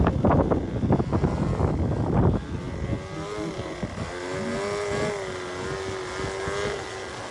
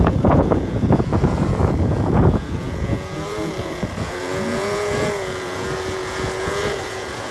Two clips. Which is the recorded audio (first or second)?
first